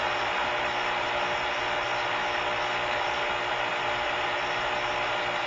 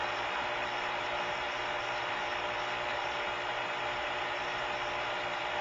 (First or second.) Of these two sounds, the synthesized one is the second